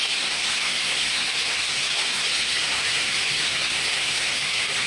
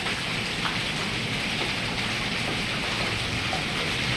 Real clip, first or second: second